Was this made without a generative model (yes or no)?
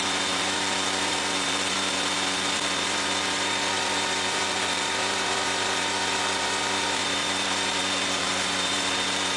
no